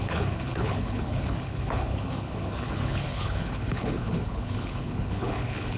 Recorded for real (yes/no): no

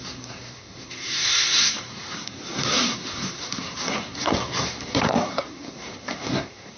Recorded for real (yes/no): no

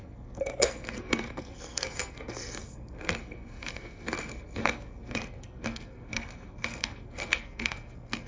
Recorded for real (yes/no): no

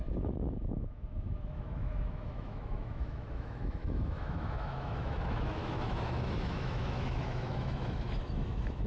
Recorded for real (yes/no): no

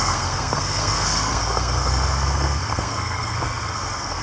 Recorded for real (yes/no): no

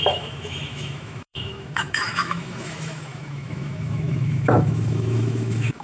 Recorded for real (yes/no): no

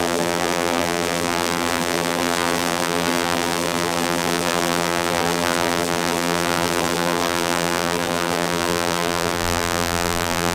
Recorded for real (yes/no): no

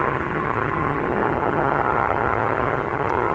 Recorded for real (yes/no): no